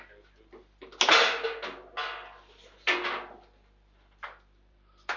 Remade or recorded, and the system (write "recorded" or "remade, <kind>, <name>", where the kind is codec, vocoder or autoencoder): recorded